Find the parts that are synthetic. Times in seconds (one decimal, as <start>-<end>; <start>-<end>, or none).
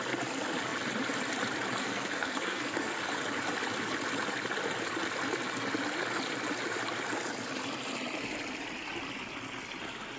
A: 1.8-2.9